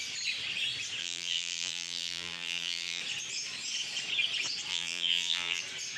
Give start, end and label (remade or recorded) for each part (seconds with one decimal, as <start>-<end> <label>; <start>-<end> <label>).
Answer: 0.0-1.0 recorded; 1.0-3.0 remade; 3.0-4.7 recorded; 4.7-5.6 remade; 5.6-6.0 recorded